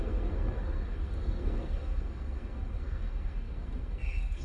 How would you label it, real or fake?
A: fake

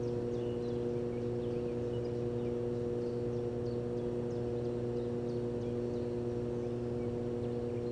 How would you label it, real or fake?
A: real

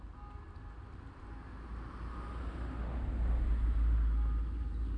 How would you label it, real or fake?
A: real